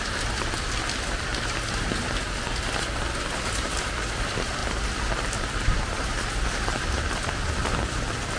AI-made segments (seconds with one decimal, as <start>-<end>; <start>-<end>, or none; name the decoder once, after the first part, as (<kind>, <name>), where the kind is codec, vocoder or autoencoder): 0.0-1.3 (vocoder, BigVGAN v2); 2.7-8.4